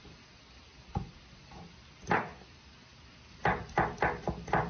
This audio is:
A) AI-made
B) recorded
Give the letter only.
B